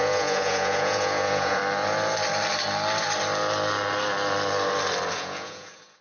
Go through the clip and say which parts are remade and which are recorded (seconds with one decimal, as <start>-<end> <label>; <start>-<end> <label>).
0.0-1.6 remade; 1.6-5.1 recorded; 5.1-6.0 remade